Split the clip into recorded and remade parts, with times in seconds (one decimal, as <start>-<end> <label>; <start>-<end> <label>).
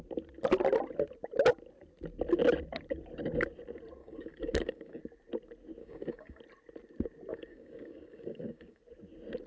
0.0-4.0 recorded; 4.0-5.0 remade; 5.0-5.8 recorded; 5.8-6.4 remade; 6.4-7.3 recorded; 7.3-8.8 remade; 8.8-9.5 recorded